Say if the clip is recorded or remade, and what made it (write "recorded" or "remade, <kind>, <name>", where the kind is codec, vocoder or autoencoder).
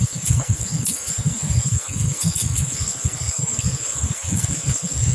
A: remade, codec, SNAC